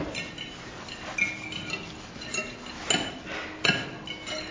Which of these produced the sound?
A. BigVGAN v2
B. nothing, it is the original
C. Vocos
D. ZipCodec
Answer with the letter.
B